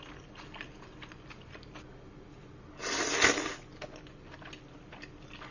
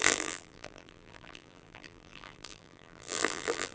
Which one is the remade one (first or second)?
second